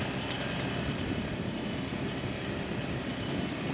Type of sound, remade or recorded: remade